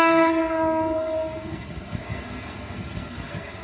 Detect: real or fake fake